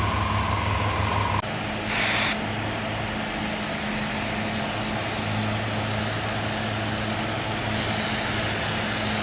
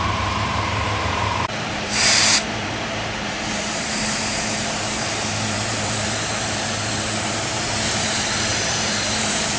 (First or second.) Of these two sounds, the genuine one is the first